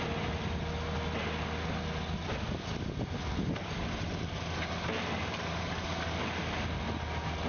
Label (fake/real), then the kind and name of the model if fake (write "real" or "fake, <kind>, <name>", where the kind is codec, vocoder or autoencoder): real